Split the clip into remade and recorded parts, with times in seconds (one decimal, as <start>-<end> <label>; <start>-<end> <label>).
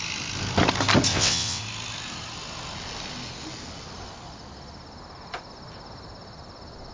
0.0-1.1 recorded; 1.1-1.6 remade; 1.6-6.9 recorded